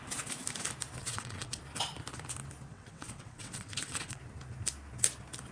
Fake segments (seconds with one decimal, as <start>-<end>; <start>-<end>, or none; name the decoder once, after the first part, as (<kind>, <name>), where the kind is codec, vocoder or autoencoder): 1.0-1.6 (vocoder, WaveNeXt); 2.7-4.2